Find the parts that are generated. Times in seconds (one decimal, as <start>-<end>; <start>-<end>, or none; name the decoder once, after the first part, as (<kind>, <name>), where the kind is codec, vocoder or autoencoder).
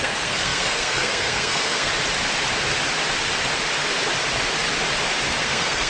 0.0-1.9 (codec, SNAC); 5.4-5.9